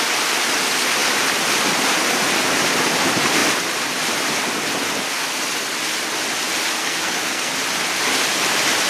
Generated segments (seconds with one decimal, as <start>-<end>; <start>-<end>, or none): 6.8-7.5